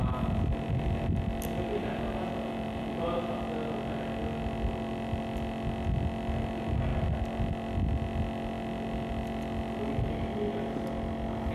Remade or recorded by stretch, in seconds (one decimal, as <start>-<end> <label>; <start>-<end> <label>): 0.0-1.8 recorded; 1.8-3.4 remade; 3.4-11.5 recorded